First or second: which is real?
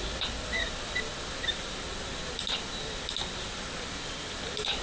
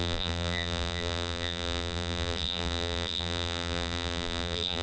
first